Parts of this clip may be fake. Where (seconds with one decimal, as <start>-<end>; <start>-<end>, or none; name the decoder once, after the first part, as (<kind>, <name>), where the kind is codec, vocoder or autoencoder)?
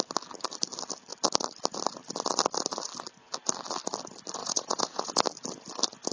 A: 4.4-5.1 (vocoder, Vocos)